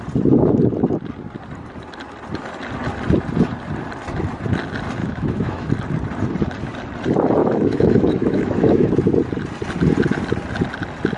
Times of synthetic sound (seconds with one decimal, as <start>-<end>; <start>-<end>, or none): 5.0-5.7; 7.4-8.9

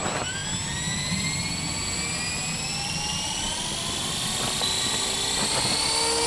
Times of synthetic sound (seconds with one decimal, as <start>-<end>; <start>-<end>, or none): none

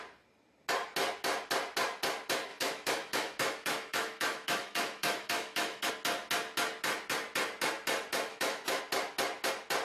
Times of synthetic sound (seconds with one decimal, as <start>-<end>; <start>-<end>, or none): 2.5-5.9; 8.3-8.8

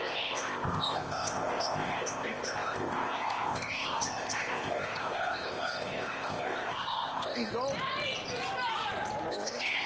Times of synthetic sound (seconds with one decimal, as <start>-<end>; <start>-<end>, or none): 0.0-7.5; 9.3-9.9

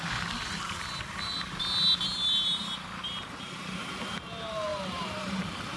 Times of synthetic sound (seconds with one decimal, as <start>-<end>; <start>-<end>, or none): 4.7-5.8

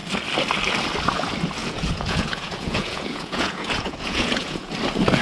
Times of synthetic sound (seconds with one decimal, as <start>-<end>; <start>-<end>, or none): 1.6-4.7